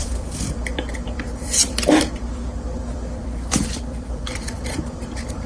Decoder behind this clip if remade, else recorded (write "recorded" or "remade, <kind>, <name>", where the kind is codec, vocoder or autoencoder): remade, vocoder, BigVGAN v2